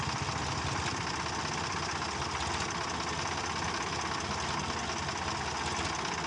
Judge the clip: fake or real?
real